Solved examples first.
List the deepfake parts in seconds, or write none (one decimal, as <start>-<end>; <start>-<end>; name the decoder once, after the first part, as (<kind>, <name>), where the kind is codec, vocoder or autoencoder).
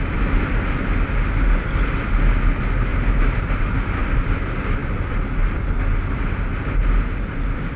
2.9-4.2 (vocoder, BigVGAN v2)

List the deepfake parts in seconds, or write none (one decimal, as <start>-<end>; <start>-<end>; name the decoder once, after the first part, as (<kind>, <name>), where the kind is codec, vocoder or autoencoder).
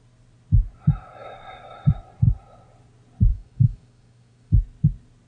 3.3-4.6 (codec, DAC)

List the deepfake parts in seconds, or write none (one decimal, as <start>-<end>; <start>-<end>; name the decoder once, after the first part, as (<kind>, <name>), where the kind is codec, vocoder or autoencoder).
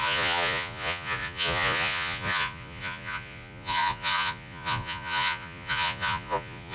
0.0-6.7 (vocoder, Vocos)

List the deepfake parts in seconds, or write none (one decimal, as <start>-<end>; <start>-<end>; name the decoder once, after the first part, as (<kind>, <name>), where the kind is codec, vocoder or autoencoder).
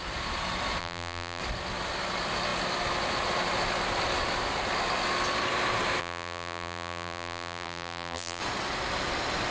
0.8-1.4 (vocoder, BigVGAN v2); 6.0-8.4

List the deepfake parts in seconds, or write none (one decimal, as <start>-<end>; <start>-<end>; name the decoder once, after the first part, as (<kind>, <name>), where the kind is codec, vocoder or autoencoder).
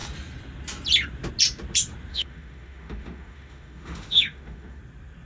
2.1-4.8 (autoencoder, DAC-VAE)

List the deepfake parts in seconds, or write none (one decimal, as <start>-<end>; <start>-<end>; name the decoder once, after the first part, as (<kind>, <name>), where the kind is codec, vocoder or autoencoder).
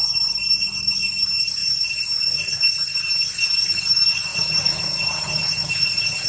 1.6-2.5 (vocoder, Vocos); 4.3-6.3